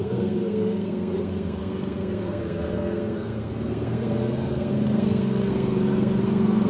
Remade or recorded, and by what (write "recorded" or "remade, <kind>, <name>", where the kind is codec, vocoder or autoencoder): remade, codec, SNAC